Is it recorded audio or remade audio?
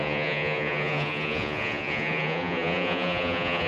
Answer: remade